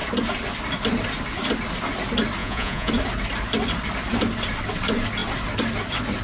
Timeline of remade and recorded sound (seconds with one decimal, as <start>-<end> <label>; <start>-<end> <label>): 0.0-2.4 recorded; 2.4-2.9 remade; 2.9-6.2 recorded